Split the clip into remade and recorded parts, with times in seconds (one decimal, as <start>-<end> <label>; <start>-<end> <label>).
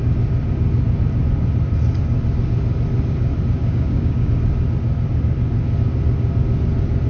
0.0-3.6 recorded; 3.6-4.3 remade; 4.3-7.1 recorded